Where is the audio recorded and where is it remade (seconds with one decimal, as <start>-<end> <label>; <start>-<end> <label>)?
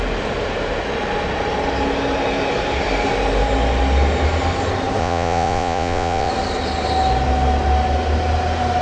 0.0-5.0 recorded; 5.0-6.3 remade; 6.3-8.8 recorded